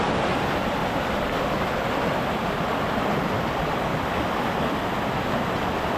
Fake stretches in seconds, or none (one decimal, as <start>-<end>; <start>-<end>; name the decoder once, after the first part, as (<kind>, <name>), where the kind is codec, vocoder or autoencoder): none